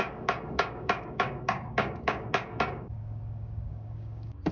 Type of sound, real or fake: fake